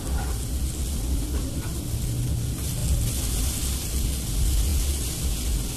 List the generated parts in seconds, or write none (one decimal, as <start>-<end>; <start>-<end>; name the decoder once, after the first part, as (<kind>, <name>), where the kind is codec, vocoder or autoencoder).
none